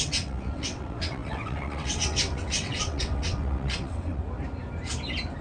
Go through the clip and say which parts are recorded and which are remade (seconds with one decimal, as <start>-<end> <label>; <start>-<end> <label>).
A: 0.0-4.2 remade; 4.2-5.4 recorded